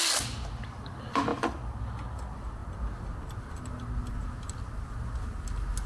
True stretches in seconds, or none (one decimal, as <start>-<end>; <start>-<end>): 0.0-2.6; 3.6-5.9